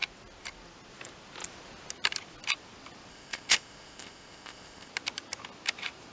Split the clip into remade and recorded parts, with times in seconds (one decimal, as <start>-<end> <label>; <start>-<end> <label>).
0.0-3.1 recorded; 3.1-4.9 remade; 4.9-6.1 recorded